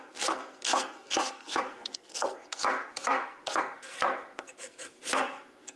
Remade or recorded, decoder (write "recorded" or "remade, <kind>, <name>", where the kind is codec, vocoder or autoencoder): remade, codec, SNAC